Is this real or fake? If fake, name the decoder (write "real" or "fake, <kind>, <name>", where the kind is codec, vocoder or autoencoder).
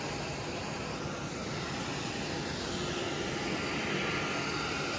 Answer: real